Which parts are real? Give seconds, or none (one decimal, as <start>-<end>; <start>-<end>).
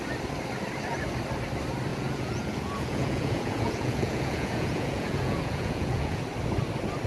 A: 0.0-1.9; 6.2-7.1